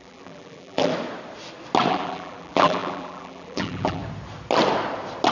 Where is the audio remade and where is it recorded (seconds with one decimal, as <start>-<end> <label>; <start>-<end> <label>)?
0.0-0.9 remade; 0.9-1.9 recorded; 1.9-4.0 remade; 4.0-5.3 recorded